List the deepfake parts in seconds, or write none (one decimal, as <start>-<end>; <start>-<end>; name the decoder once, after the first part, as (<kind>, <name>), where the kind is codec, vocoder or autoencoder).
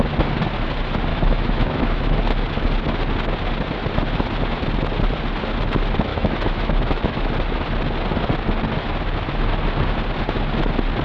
1.1-2.2 (autoencoder, DAC-VAE); 6.1-7.3